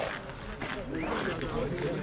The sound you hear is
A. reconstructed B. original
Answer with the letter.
B